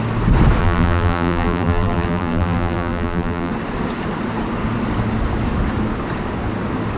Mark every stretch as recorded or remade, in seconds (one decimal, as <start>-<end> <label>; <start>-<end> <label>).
0.0-0.6 recorded; 0.6-3.5 remade; 3.5-7.0 recorded